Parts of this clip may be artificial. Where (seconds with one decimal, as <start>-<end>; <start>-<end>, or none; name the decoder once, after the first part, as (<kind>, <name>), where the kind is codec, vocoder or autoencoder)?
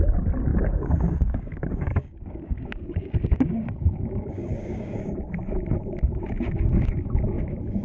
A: 0.5-5.2 (codec, DAC)